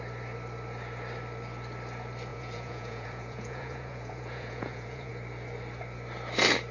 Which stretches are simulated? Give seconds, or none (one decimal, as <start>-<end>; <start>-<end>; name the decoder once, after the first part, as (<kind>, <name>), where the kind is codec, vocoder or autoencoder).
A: 2.3-5.1 (vocoder, Vocos)